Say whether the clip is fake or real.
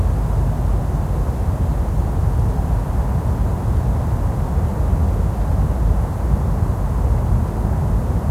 real